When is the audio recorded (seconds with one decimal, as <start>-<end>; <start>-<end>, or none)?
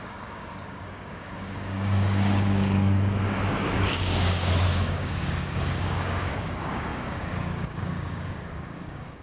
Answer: none